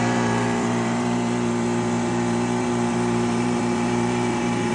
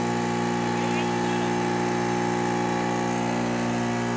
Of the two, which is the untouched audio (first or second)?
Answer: second